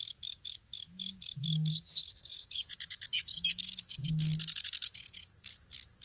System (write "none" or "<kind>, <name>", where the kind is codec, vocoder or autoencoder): codec, DAC